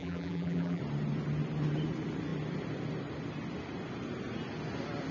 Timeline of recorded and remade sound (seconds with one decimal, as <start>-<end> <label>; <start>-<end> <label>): 0.0-0.8 remade; 0.8-5.1 recorded

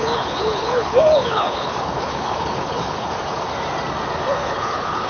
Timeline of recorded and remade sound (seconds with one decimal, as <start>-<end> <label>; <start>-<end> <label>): 0.0-3.1 remade; 3.1-4.4 recorded; 4.4-5.1 remade

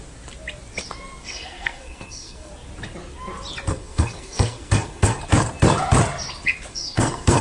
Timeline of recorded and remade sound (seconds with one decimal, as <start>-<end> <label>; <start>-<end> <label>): 0.0-1.2 recorded; 1.2-2.5 remade; 2.5-3.7 recorded; 3.7-5.2 remade; 5.2-6.7 recorded; 6.7-7.4 remade

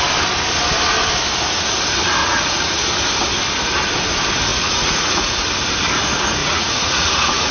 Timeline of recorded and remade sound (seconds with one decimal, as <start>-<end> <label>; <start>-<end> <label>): 0.0-2.2 recorded; 2.2-2.8 remade; 2.8-4.5 recorded; 4.5-5.4 remade; 5.4-6.4 recorded; 6.4-7.5 remade

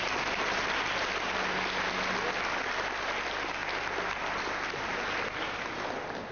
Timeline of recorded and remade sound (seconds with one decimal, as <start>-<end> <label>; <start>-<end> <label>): 0.0-6.3 recorded